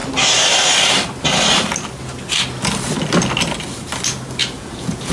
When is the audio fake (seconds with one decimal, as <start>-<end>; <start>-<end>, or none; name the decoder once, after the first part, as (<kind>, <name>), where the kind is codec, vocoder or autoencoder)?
4.4-5.1 (vocoder, Vocos)